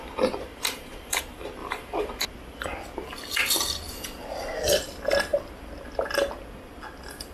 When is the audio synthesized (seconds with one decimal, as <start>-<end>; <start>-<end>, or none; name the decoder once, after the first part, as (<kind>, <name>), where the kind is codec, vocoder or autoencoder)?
0.5-1.2 (vocoder, BigVGAN v2); 1.6-2.2